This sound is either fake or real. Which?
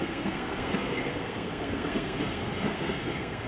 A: fake